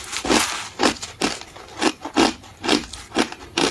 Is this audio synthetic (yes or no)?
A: yes